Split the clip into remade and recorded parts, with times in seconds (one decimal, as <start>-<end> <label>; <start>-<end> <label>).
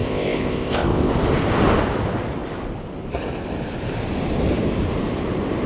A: 0.0-1.1 remade; 1.1-5.7 recorded